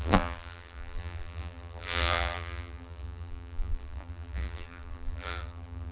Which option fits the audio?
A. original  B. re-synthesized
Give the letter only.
B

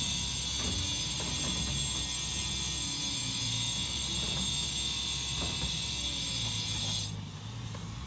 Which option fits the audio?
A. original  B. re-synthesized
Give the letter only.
A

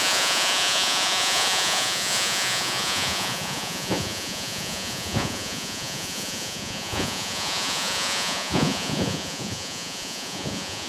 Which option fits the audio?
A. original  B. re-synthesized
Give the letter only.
B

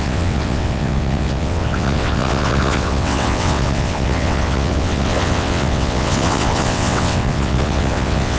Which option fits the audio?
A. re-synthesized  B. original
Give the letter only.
A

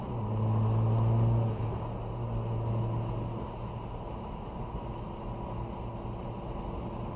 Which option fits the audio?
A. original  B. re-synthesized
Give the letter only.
A